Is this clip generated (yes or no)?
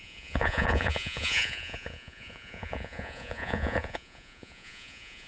yes